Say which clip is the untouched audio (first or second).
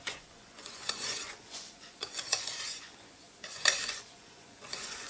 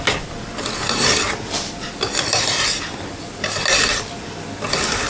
second